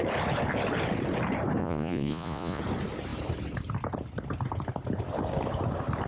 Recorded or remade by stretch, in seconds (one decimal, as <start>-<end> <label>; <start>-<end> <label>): 0.0-1.6 recorded; 1.6-2.6 remade; 2.6-6.1 recorded